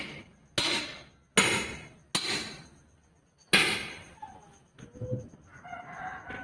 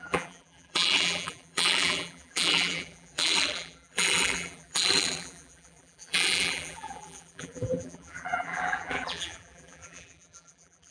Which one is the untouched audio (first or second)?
first